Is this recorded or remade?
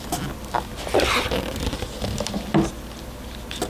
recorded